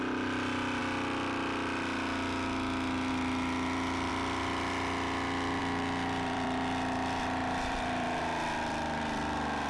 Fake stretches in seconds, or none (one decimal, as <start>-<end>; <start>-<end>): 0.0-0.8; 3.1-4.1; 5.6-9.7